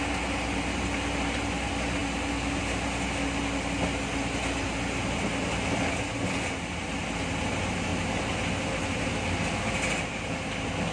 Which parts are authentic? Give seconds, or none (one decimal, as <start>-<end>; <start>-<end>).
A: 0.0-10.9